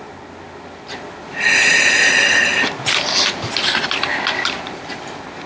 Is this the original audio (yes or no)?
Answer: yes